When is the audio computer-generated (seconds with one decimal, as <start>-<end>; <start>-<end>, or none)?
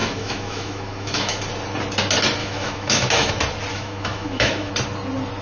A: 0.0-1.4; 2.4-3.3; 3.7-4.7